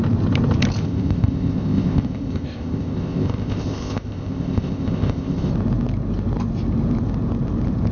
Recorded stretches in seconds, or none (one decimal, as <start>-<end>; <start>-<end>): 0.0-0.8; 5.5-7.9

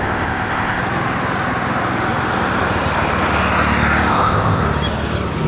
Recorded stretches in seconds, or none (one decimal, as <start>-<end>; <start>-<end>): 0.8-4.1; 4.6-5.5